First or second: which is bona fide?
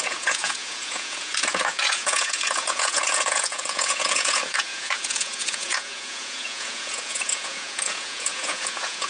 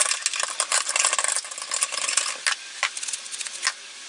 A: second